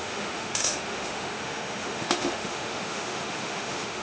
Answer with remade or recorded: remade